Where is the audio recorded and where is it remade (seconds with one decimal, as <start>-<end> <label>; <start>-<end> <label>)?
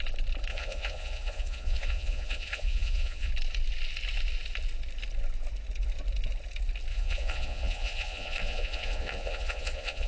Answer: 0.0-0.5 recorded; 0.5-3.3 remade; 3.3-6.9 recorded; 6.9-10.1 remade